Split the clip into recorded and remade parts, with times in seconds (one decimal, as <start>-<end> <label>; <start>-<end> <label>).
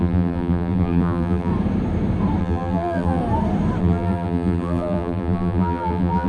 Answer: 0.0-1.5 remade; 1.5-2.4 recorded; 2.4-3.2 remade; 3.2-3.8 recorded; 3.8-6.3 remade